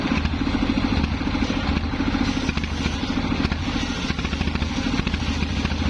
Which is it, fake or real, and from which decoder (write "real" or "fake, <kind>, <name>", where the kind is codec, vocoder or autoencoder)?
real